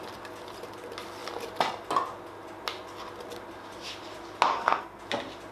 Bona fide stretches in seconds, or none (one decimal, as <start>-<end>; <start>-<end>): 0.0-4.5; 5.0-5.5